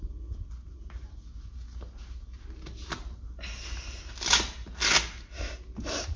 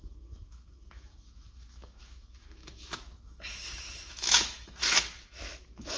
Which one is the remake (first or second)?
second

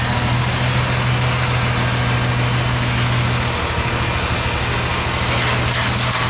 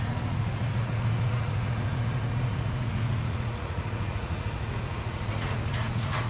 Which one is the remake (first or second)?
second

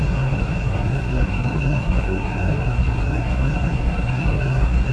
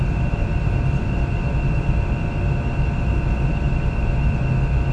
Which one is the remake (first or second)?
first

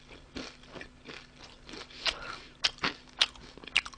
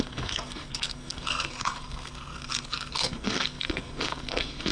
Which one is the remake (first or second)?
second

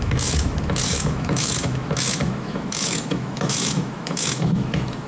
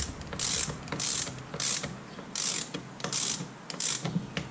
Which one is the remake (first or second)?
first